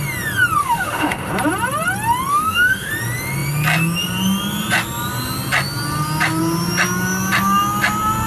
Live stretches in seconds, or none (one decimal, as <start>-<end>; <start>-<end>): 0.0-0.6; 1.3-2.3; 2.9-8.3